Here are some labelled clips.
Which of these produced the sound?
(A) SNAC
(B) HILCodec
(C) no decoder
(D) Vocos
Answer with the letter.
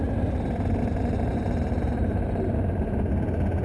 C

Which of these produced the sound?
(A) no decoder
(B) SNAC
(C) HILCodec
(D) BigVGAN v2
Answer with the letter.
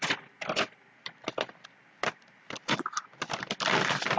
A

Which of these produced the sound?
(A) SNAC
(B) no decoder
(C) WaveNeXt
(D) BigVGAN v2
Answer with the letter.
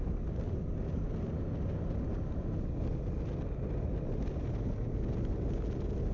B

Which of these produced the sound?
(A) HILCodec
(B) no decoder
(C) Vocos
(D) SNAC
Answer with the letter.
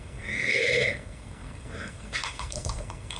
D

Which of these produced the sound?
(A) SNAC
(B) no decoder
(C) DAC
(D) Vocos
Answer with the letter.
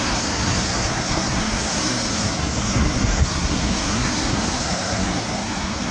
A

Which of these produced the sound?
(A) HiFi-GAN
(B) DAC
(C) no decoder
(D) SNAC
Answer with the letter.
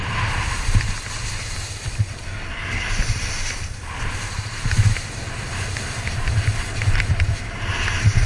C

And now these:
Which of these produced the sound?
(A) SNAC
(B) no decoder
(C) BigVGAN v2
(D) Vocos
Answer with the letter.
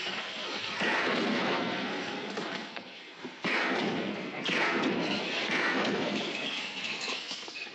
A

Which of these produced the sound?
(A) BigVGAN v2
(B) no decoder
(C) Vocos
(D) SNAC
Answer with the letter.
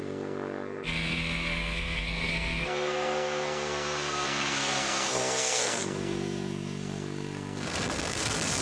D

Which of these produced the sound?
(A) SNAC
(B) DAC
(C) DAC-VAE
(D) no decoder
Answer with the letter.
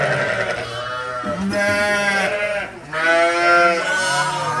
D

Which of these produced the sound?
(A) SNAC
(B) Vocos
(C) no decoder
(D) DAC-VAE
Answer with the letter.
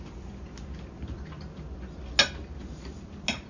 C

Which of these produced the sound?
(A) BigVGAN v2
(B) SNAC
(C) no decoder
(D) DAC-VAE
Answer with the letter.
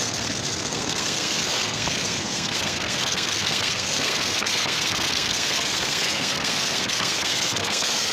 B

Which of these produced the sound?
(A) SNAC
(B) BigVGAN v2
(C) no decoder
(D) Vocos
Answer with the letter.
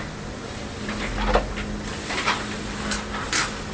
C